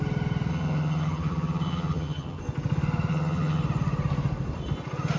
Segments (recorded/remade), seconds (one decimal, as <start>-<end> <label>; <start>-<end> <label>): 0.0-0.5 recorded; 0.5-2.4 remade; 2.4-3.1 recorded; 3.1-3.6 remade; 3.6-5.2 recorded